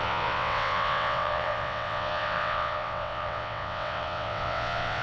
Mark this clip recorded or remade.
remade